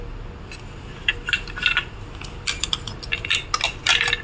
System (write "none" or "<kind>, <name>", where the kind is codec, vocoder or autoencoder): none